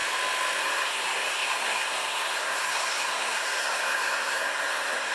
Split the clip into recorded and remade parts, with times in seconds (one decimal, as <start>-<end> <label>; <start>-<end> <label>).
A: 0.0-0.6 recorded; 0.6-5.1 remade